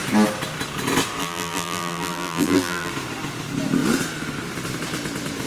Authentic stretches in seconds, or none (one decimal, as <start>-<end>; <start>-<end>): 0.0-1.2; 2.9-5.5